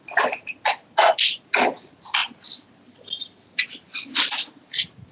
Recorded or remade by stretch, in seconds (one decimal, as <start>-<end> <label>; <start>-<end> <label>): 0.0-5.1 recorded